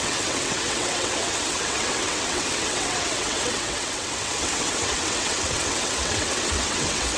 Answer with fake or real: fake